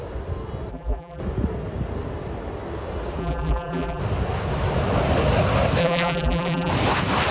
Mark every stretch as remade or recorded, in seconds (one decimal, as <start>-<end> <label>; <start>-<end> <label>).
0.0-0.7 recorded; 0.7-1.2 remade; 1.2-3.2 recorded; 3.2-4.0 remade; 4.0-5.8 recorded; 5.8-6.7 remade; 6.7-7.3 recorded